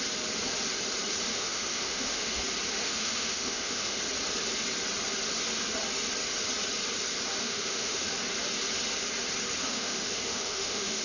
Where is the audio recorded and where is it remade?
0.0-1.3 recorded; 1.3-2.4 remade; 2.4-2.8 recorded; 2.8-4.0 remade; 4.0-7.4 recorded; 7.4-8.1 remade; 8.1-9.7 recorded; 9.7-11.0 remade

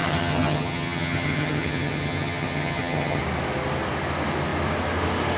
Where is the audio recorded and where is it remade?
0.0-3.2 remade; 3.2-5.4 recorded